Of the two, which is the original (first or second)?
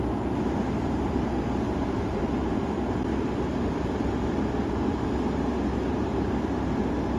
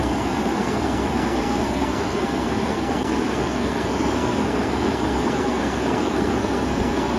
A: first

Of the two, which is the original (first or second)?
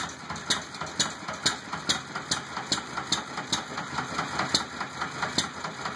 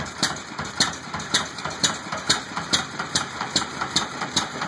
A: first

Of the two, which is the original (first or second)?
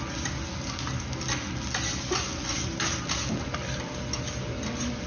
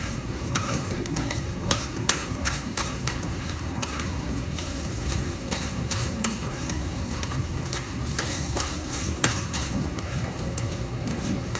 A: first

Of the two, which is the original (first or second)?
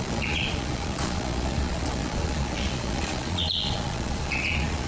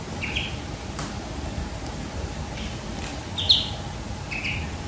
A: second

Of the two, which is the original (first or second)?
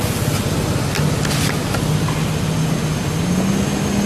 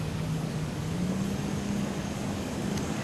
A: first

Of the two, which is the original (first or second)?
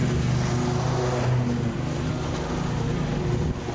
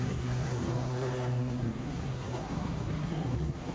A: first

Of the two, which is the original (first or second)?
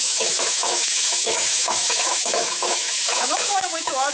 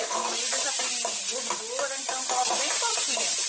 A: second